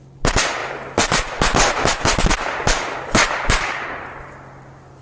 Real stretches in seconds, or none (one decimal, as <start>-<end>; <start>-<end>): 0.0-5.0